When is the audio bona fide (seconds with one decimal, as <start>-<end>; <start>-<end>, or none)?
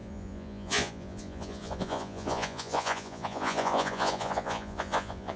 none